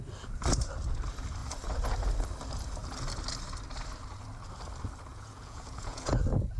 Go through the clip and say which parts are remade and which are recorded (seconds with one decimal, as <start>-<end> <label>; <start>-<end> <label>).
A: 0.0-5.1 recorded; 5.1-6.1 remade; 6.1-6.6 recorded